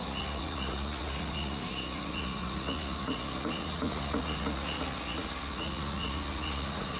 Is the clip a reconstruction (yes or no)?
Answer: yes